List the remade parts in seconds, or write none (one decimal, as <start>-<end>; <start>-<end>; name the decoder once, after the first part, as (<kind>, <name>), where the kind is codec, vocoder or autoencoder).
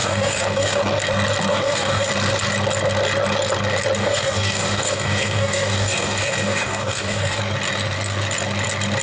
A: 0.0-0.8 (codec, DAC); 1.5-2.1; 4.0-7.4